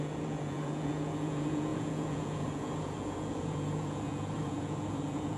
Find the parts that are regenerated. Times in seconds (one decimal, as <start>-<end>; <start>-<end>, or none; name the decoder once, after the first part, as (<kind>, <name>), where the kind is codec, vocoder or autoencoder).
0.0-5.4 (vocoder, Vocos)